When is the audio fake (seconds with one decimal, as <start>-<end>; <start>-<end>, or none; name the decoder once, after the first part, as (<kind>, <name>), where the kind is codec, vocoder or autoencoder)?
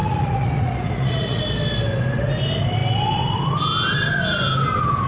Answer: 0.0-1.4 (vocoder, Vocos)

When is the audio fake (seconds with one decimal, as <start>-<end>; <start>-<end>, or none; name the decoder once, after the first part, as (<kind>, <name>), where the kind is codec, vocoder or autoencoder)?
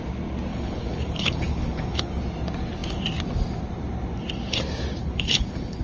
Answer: 0.5-2.1 (codec, HILCodec); 5.0-5.8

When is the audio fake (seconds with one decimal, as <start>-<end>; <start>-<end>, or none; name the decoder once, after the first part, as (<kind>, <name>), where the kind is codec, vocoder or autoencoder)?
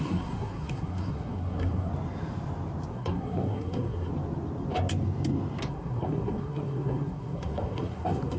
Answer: 0.0-1.9 (codec, SNAC); 2.9-4.1; 5.7-8.4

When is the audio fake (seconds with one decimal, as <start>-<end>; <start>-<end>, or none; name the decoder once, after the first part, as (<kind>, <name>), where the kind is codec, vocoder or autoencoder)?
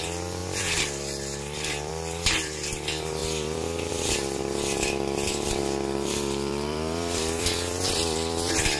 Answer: 0.0-8.8 (vocoder, BigVGAN v2)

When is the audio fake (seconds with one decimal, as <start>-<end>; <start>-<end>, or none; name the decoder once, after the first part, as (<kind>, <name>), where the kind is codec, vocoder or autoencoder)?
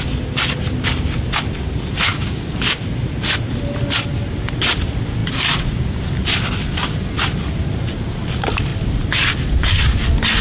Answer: 2.1-2.8 (codec, DAC)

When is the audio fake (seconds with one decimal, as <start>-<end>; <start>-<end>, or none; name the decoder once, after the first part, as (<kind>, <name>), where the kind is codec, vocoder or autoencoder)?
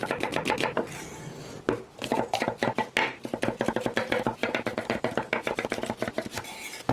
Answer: 4.4-5.7 (vocoder, BigVGAN v2)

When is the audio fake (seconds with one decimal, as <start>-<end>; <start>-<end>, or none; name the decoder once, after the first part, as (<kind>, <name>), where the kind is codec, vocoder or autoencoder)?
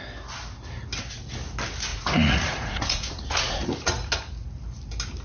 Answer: 1.9-3.9 (vocoder, Vocos)